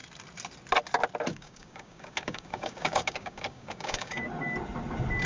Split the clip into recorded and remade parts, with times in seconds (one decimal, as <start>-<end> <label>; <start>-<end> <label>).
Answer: 0.0-1.3 recorded; 1.3-4.3 remade; 4.3-5.3 recorded